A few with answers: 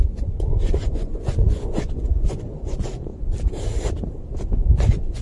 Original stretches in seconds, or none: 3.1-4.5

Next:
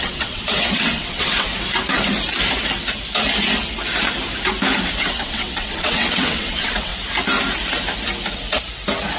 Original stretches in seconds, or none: 1.5-5.0; 6.9-9.2

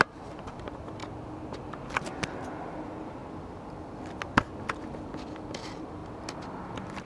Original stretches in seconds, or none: 1.0-2.7; 3.2-5.3; 6.0-7.0